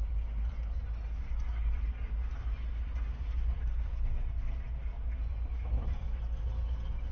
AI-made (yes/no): no